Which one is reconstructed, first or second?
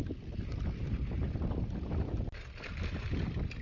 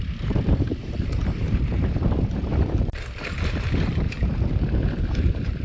second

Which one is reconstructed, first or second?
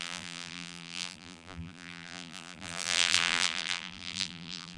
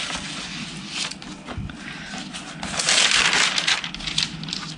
first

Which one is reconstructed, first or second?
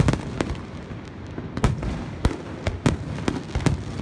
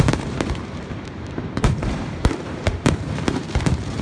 second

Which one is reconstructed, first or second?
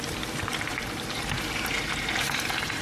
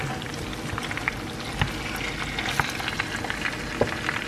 first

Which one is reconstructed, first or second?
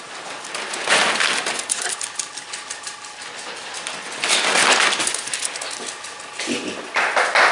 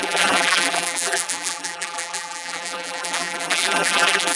second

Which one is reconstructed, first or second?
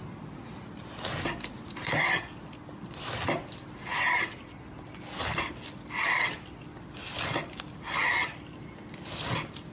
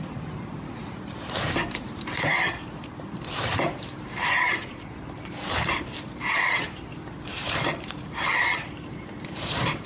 second